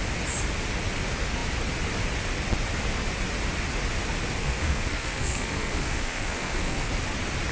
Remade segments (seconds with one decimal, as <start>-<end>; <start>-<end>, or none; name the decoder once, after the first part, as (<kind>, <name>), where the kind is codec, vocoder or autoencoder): 4.4-6.9 (codec, SNAC)